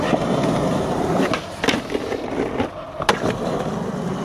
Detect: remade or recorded recorded